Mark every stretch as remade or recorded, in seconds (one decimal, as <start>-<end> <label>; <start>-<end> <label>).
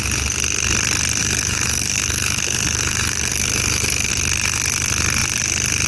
0.0-1.2 recorded; 1.2-4.1 remade; 4.1-5.9 recorded